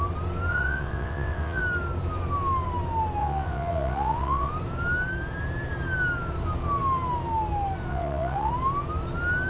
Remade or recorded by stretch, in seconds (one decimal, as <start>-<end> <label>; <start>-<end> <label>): 0.0-0.5 recorded; 0.5-1.6 remade; 1.6-3.2 recorded; 3.2-4.5 remade; 4.5-7.9 recorded; 7.9-8.5 remade; 8.5-9.5 recorded

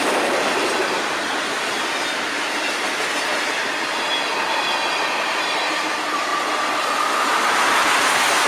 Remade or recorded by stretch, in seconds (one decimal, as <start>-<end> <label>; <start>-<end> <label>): 0.0-8.5 recorded

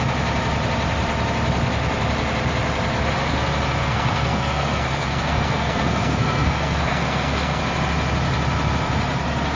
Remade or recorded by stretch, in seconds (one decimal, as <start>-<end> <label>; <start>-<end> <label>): 0.0-3.8 recorded; 3.8-7.6 remade; 7.6-9.6 recorded

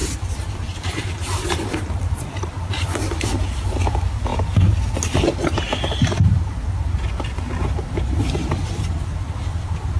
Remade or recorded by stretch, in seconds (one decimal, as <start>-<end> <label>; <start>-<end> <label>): 0.0-8.4 remade; 8.4-9.3 recorded; 9.3-10.0 remade

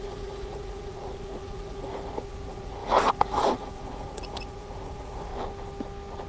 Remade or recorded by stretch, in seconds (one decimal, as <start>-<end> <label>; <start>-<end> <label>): 0.0-5.3 remade; 5.3-6.3 recorded